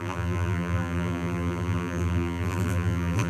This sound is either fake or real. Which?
fake